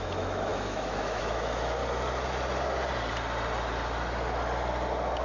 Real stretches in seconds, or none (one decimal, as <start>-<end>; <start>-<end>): 1.8-5.2

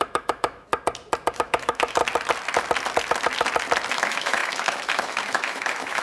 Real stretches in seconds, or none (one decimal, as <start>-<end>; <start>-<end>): 0.7-1.3; 2.0-3.9

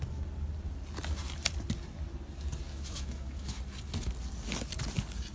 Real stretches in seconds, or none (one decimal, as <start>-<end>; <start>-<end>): 0.0-2.7; 3.6-5.3

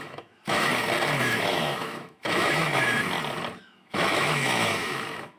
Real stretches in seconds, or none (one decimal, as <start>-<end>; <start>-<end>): 0.7-1.2; 2.8-3.6

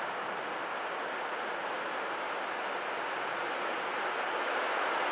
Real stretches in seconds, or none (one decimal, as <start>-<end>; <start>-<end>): 0.0-5.1

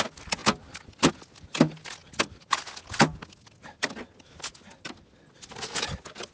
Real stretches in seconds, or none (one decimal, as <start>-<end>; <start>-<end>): 0.0-6.3

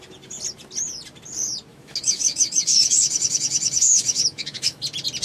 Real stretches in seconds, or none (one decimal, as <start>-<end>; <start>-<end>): 0.0-1.7; 4.8-5.2